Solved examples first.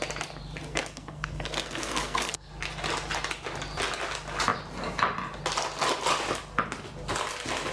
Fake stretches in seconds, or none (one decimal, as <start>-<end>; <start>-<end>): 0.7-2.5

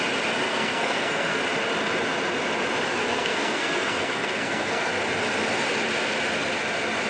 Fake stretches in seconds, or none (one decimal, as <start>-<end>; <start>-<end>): 0.5-1.4; 3.0-4.9

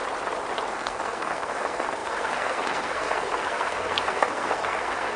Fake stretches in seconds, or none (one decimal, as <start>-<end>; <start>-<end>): 0.7-5.2

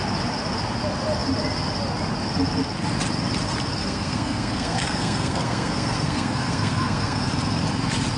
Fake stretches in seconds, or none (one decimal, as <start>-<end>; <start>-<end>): 3.8-7.3

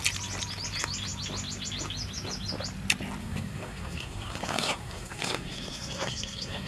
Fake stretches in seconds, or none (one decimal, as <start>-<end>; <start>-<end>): 3.2-6.7